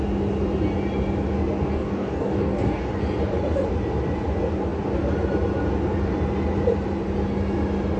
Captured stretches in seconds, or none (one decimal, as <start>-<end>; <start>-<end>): 0.0-1.7; 3.0-8.0